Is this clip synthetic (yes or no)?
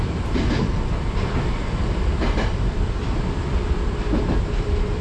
yes